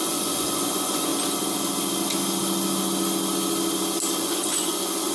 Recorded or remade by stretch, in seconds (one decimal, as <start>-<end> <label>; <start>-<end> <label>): 0.0-1.1 remade; 1.1-4.2 recorded; 4.2-5.1 remade